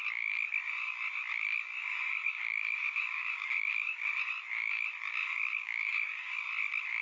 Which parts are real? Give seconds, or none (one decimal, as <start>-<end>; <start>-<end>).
0.0-1.8; 4.1-5.2; 6.4-7.0